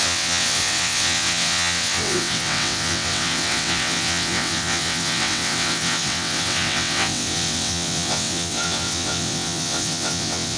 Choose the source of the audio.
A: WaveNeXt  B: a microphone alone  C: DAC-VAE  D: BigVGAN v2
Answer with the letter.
A